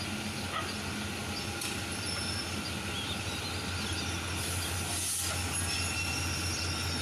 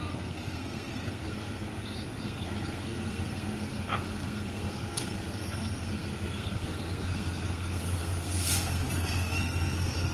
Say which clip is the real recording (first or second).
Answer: first